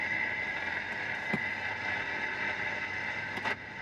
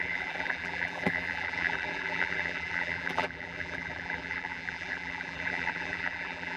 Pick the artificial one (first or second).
second